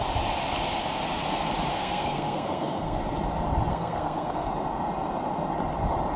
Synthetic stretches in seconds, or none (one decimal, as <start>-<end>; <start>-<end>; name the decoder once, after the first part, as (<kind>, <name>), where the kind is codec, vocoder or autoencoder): 1.7-3.0 (codec, SNAC); 3.7-4.5